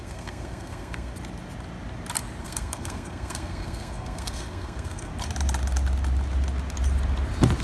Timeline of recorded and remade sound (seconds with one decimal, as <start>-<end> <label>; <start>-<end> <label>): 0.0-1.1 remade; 1.1-2.4 recorded; 2.4-5.1 remade; 5.1-7.6 recorded